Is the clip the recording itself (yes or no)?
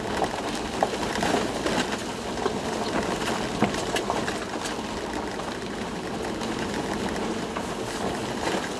yes